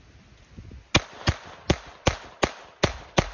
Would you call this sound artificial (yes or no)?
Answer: no